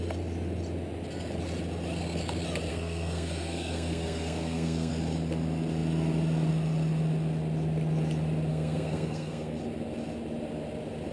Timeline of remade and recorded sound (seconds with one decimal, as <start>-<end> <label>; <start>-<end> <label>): 0.0-2.7 recorded; 2.7-4.9 remade; 4.9-8.5 recorded; 8.5-9.6 remade; 9.6-11.1 recorded